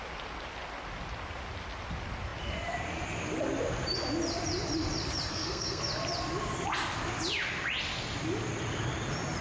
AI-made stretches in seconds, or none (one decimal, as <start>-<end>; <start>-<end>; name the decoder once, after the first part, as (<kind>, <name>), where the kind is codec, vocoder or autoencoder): 5.3-5.8 (codec, SNAC)